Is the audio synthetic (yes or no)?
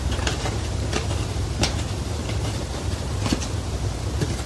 yes